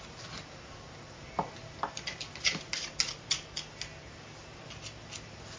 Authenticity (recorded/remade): recorded